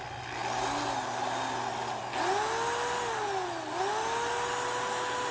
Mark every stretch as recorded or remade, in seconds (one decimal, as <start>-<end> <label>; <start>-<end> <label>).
0.0-5.3 recorded